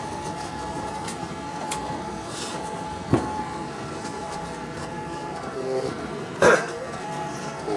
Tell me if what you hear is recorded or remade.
remade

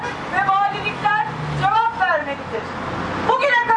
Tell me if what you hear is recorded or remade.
recorded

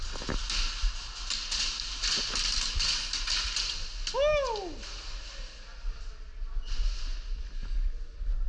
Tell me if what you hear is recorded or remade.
recorded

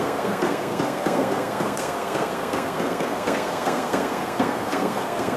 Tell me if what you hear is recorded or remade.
remade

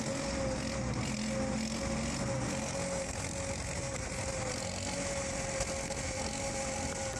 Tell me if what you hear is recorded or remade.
recorded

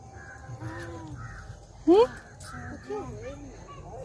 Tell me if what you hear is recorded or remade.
recorded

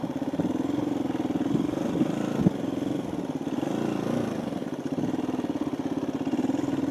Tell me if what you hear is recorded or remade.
recorded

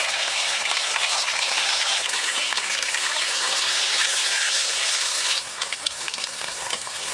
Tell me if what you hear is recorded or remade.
remade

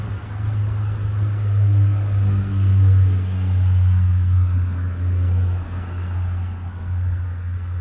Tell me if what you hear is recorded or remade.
remade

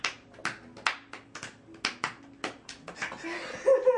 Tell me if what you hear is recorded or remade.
recorded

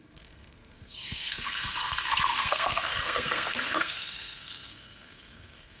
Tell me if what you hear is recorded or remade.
remade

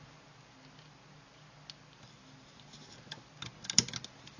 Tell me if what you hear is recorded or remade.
recorded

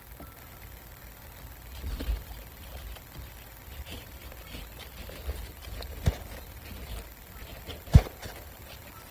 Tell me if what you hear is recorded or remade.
recorded